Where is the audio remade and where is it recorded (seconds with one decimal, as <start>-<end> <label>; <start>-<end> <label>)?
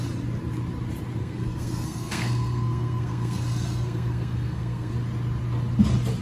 0.0-1.2 recorded; 1.2-4.9 remade; 4.9-6.2 recorded